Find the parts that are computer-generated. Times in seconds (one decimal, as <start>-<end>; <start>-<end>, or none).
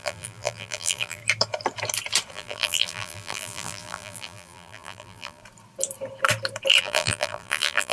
0.0-1.2; 2.3-5.4; 6.8-7.9